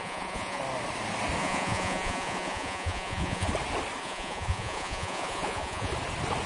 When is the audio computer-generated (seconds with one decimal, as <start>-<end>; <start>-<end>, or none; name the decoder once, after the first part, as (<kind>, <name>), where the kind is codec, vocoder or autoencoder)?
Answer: 0.0-0.6 (vocoder, Vocos); 1.4-3.5; 4.0-5.9